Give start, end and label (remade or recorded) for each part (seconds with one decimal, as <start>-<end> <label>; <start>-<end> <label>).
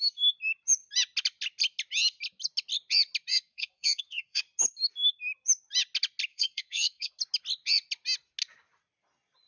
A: 0.0-3.3 recorded; 3.3-4.4 remade; 4.4-6.3 recorded; 6.3-7.2 remade; 7.2-9.5 recorded